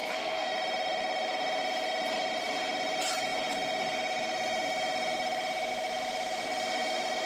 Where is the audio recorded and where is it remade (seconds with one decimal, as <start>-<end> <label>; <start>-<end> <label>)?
0.0-0.5 remade; 0.5-7.3 recorded